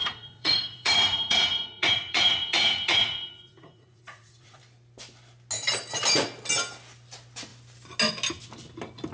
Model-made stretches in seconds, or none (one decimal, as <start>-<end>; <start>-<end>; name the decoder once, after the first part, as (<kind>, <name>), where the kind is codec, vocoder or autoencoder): 0.0-4.6 (vocoder, Vocos)